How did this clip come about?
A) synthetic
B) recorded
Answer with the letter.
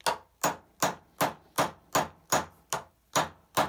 B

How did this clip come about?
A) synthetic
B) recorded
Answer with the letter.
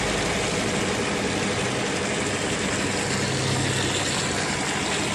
B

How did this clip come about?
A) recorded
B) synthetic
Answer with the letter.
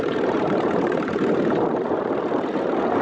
B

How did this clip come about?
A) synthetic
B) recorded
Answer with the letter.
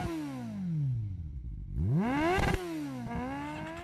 B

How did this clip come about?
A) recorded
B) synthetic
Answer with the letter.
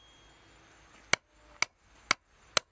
A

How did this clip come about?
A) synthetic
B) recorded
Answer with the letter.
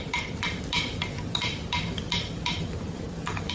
A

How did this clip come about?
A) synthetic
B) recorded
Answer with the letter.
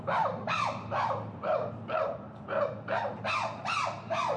A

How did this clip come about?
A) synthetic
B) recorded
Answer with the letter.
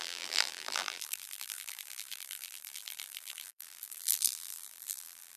A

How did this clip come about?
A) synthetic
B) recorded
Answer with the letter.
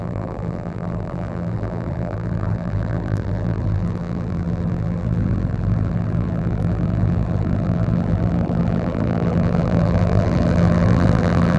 A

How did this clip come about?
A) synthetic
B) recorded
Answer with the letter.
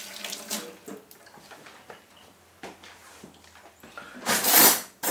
B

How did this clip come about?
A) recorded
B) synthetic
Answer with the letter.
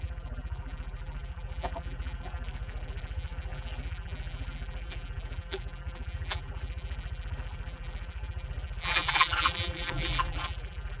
B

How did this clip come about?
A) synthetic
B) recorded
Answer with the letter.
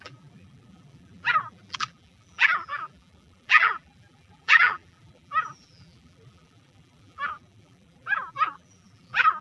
A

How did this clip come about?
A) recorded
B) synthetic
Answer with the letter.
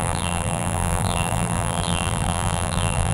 B